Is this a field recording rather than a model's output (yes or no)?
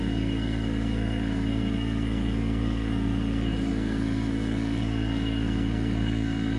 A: no